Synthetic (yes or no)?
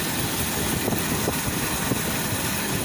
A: no